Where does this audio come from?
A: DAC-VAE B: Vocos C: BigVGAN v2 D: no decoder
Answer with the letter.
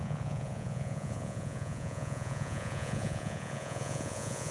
B